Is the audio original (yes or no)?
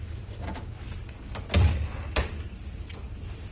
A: yes